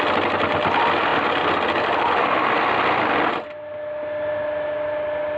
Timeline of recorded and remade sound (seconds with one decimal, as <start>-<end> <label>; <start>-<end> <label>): 0.0-5.4 recorded

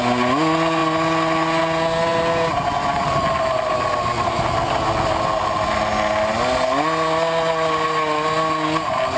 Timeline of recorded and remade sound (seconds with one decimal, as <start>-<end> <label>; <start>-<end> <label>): 0.0-9.2 recorded